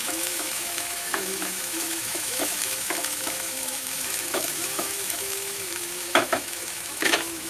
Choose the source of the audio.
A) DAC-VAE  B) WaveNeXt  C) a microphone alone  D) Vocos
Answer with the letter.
A